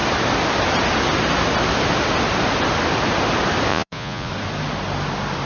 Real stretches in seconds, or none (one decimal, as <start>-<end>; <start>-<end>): 0.0-3.7; 4.3-5.5